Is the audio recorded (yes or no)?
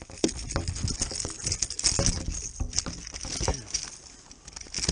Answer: yes